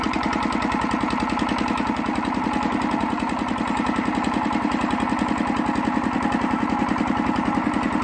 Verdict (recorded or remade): recorded